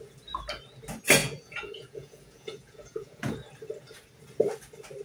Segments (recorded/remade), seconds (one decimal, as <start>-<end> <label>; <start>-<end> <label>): 0.0-1.2 recorded; 1.2-3.3 remade; 3.3-5.0 recorded